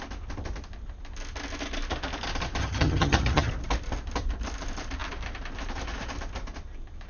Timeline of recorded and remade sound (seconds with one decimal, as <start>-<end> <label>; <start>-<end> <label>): 0.0-2.6 recorded; 2.6-3.5 remade; 3.5-7.1 recorded